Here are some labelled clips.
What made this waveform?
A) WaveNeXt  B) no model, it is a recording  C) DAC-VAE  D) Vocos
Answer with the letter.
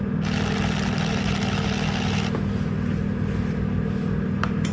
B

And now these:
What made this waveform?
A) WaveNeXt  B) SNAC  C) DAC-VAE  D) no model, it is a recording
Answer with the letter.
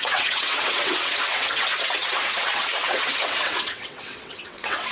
A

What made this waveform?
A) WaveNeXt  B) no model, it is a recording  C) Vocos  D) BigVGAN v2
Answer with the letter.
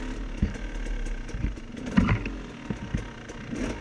B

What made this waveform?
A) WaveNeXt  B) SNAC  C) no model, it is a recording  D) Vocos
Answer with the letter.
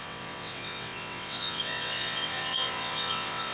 A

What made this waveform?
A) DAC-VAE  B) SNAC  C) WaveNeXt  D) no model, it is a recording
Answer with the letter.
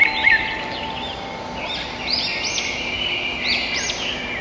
D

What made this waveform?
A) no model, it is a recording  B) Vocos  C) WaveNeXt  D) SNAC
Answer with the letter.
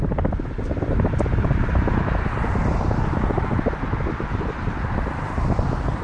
A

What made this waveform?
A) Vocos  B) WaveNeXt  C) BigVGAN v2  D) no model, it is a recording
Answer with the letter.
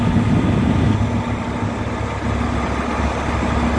D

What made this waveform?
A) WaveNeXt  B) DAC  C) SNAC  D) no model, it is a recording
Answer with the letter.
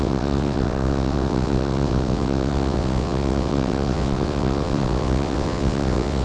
A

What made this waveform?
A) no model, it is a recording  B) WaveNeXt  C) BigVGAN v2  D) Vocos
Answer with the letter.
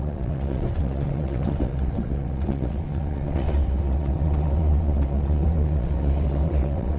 B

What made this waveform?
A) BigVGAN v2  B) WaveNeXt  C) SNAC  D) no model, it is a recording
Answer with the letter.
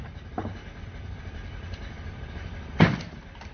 D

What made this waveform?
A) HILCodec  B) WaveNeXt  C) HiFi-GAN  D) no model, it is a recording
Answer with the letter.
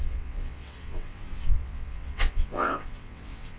B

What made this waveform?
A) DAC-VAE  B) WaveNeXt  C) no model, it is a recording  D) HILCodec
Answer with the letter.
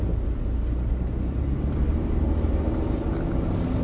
C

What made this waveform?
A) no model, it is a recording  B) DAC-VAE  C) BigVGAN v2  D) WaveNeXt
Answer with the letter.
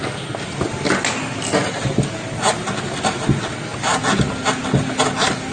A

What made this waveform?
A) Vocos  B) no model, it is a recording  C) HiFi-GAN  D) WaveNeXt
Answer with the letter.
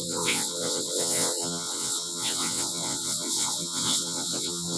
D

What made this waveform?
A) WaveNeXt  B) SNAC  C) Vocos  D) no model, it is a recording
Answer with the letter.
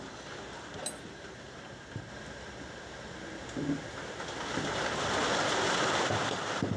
D